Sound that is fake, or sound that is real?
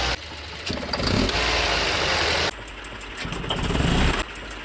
real